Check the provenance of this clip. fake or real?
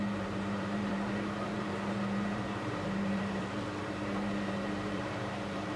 fake